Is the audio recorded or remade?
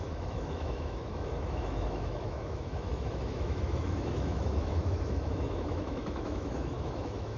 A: remade